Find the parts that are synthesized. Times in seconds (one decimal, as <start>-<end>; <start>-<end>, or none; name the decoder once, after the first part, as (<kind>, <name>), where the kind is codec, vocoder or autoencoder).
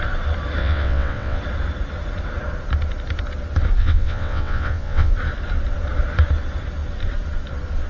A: 0.6-1.4 (vocoder, WaveNeXt); 3.8-5.1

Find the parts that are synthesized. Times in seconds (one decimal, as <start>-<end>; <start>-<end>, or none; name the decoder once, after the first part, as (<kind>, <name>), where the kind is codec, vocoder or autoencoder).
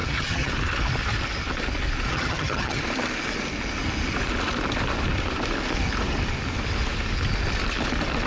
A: 0.0-0.5 (vocoder, HiFi-GAN); 2.1-2.8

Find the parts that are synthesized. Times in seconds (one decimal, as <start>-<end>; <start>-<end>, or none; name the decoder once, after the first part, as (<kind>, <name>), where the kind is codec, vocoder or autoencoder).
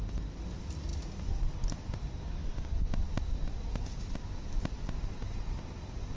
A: none